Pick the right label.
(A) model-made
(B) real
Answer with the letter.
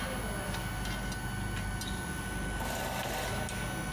B